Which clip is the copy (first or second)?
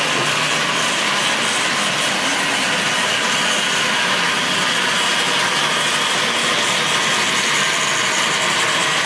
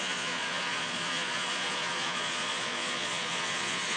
second